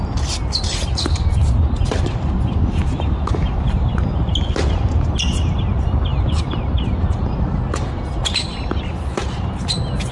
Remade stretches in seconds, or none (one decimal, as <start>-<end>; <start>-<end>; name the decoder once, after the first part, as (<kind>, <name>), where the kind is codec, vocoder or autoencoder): none